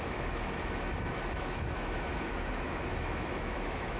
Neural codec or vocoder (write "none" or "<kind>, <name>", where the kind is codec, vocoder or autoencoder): autoencoder, DAC-VAE